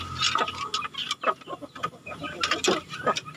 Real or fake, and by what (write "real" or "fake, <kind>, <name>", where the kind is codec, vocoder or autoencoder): real